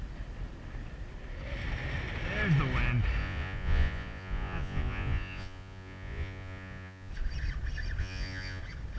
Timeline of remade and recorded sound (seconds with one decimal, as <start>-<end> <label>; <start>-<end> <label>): 0.0-3.2 recorded; 3.2-7.1 remade; 7.1-8.0 recorded; 8.0-8.6 remade; 8.6-9.0 recorded

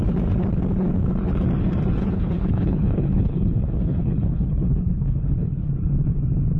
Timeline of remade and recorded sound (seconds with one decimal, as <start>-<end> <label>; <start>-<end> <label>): 0.0-2.0 recorded; 2.0-5.7 remade; 5.7-6.6 recorded

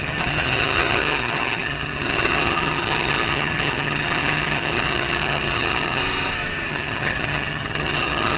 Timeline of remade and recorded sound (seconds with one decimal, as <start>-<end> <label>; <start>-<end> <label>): 0.0-6.0 remade; 6.0-6.7 recorded; 6.7-8.4 remade

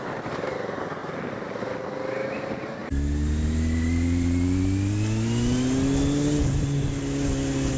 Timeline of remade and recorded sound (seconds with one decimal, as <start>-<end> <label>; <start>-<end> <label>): 0.0-7.8 recorded

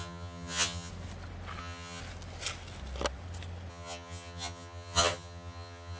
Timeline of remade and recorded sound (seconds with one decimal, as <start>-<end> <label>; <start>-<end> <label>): 0.0-0.9 remade; 0.9-1.6 recorded; 1.6-2.0 remade; 2.0-3.7 recorded; 3.7-6.0 remade

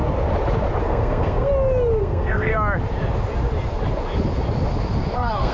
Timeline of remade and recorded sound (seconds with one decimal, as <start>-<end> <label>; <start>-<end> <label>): 0.0-0.8 recorded; 0.8-1.5 remade; 1.5-2.0 recorded; 2.0-2.5 remade; 2.5-5.1 recorded; 5.1-5.5 remade

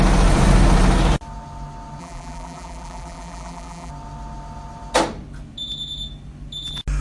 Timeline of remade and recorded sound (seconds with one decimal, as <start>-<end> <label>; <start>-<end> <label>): 0.0-2.0 recorded; 2.0-3.9 remade; 3.9-7.0 recorded